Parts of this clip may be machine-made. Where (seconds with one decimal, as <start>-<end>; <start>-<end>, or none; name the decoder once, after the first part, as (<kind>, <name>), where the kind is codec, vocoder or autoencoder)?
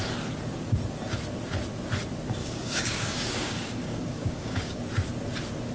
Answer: 2.4-4.8 (codec, DAC)